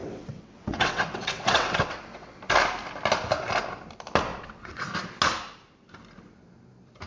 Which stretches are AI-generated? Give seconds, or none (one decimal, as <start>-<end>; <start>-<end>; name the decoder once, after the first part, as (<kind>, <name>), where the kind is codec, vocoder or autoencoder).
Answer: 0.0-2.4 (vocoder, WaveNeXt); 4.3-4.9